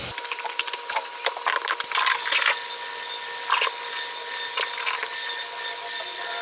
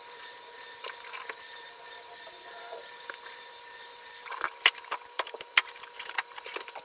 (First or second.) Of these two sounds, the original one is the first